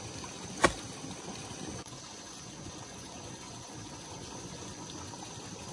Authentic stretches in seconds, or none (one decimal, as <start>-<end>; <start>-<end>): 0.0-1.7; 4.8-5.7